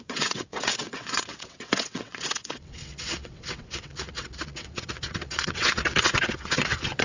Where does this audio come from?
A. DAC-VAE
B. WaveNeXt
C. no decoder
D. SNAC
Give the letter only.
B